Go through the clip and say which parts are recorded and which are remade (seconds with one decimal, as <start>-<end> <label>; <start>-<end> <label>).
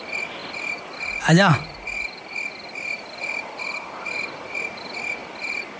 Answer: 0.0-0.4 remade; 0.4-3.9 recorded; 3.9-5.2 remade; 5.2-5.8 recorded